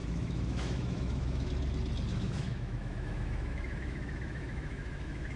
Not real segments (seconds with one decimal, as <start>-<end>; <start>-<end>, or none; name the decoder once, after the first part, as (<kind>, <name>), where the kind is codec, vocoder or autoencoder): 0.0-1.5 (autoencoder, DAC-VAE); 2.1-5.4